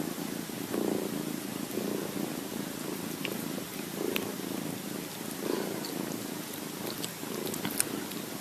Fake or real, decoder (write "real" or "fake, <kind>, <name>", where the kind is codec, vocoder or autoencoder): real